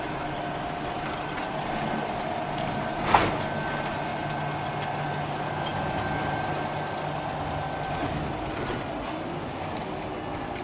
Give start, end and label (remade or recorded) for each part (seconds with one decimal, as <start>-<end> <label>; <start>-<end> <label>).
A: 0.0-10.6 recorded